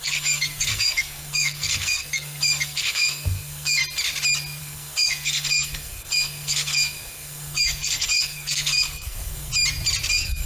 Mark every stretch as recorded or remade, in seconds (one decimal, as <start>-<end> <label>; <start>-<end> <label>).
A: 0.0-3.8 remade; 3.8-4.6 recorded; 4.6-9.5 remade; 9.5-10.1 recorded; 10.1-10.5 remade